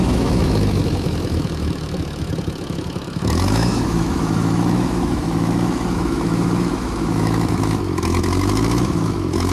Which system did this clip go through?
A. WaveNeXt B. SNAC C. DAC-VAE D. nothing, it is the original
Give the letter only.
C